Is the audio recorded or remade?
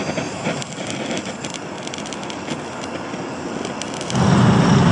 recorded